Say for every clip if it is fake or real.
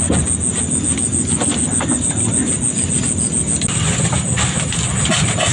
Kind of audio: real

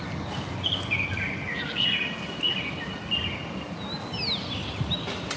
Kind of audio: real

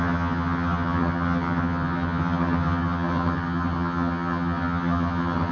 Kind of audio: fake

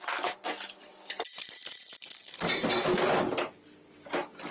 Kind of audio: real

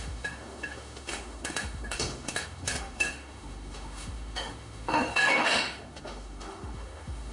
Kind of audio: fake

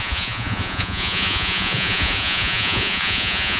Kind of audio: fake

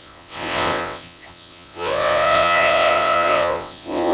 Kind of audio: fake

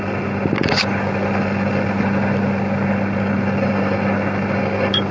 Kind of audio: real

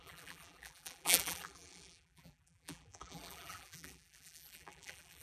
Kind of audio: fake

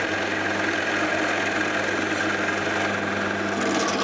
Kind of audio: real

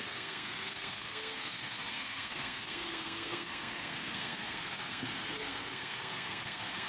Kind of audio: fake